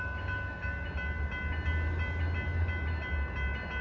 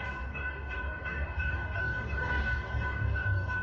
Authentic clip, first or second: first